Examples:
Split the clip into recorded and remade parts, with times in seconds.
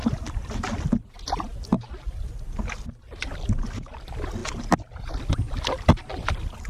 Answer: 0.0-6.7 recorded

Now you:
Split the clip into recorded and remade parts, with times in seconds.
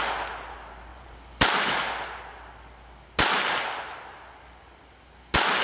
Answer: 0.0-0.9 recorded; 0.9-2.2 remade; 2.2-5.6 recorded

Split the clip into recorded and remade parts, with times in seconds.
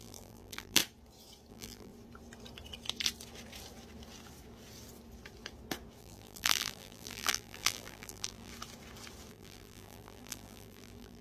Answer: 0.0-0.8 remade; 0.8-1.5 recorded; 1.5-1.9 remade; 1.9-6.0 recorded; 6.0-8.5 remade; 8.5-9.3 recorded; 9.3-11.2 remade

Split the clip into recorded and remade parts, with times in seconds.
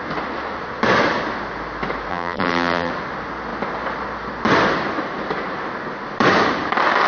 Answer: 0.0-2.1 recorded; 2.1-2.9 remade; 2.9-7.1 recorded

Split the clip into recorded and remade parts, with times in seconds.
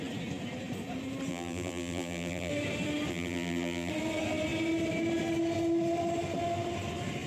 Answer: 0.0-1.3 recorded; 1.3-2.5 remade; 2.5-3.1 recorded; 3.1-3.9 remade; 3.9-7.3 recorded